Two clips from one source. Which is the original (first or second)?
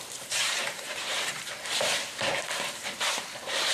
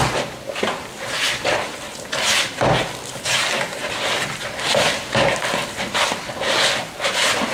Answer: second